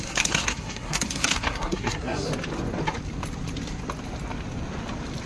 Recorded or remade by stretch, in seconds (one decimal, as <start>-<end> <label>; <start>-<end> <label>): 0.0-2.3 remade; 2.3-5.3 recorded